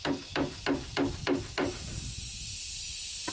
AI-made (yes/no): no